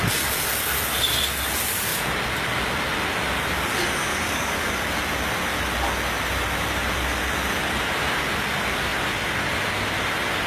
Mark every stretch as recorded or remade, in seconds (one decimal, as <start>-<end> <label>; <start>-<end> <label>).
0.0-4.1 recorded; 4.1-4.7 remade; 4.7-10.5 recorded